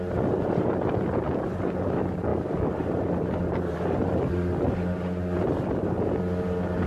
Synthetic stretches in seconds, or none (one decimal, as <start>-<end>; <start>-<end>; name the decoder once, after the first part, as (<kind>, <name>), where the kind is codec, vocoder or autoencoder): 2.3-4.3 (vocoder, BigVGAN v2)